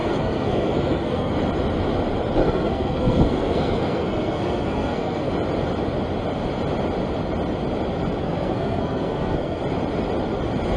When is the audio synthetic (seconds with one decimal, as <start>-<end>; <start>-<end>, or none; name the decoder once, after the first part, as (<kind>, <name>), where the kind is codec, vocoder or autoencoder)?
0.0-1.3 (codec, SNAC); 2.4-5.3; 8.2-9.6